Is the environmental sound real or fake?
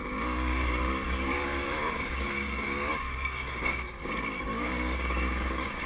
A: fake